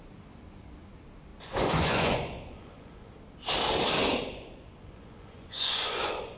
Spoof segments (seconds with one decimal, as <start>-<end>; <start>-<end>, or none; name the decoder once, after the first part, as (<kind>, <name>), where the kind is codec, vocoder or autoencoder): 1.3-3.1 (vocoder, Vocos); 4.1-6.4